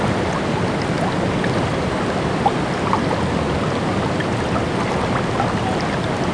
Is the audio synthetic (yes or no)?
no